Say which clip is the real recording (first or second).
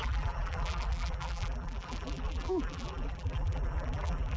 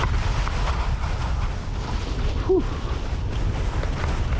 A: second